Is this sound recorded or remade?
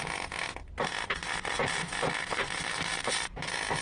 recorded